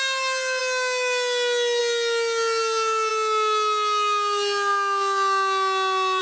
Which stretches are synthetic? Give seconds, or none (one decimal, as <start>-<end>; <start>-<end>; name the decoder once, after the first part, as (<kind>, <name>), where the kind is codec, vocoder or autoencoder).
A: none